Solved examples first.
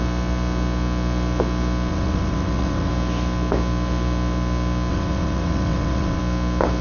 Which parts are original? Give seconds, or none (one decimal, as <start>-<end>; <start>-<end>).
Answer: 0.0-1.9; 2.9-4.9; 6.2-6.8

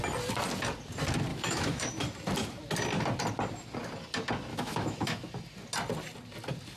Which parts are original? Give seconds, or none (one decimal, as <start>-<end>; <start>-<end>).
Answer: 0.0-1.3; 1.9-4.5; 5.3-6.8

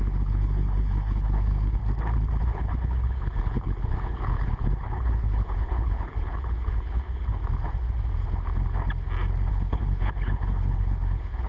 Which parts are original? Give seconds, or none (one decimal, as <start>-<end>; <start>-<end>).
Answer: 1.8-2.4; 7.4-9.5

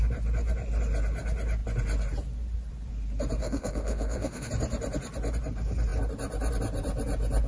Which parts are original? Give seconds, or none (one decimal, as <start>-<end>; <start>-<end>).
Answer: 0.0-3.4; 4.5-7.5

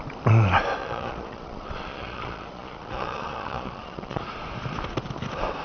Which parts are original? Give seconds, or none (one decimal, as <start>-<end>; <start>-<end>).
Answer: 0.0-0.8; 4.2-5.6

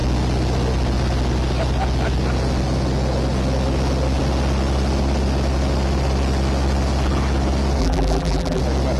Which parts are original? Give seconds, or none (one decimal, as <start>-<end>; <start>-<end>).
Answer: 0.0-7.8; 8.6-9.0

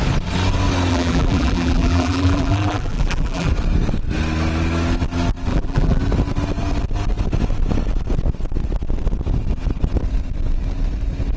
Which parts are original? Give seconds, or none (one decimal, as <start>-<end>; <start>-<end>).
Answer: 0.0-0.9; 3.5-5.5; 6.0-11.4